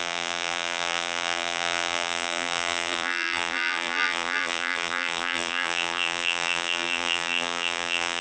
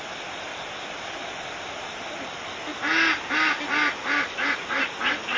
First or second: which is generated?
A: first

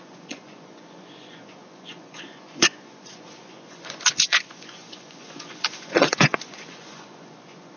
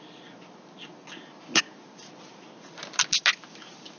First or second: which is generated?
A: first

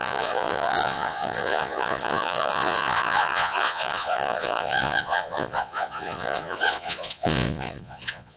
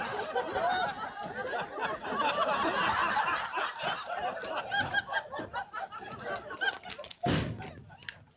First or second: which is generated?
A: first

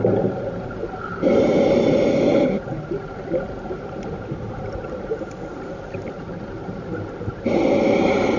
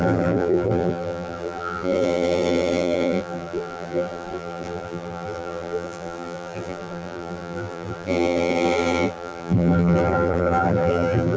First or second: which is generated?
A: second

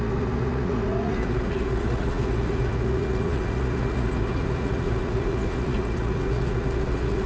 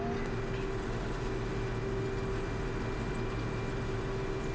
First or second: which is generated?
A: first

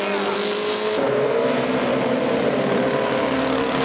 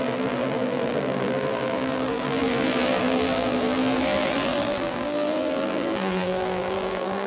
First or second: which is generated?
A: second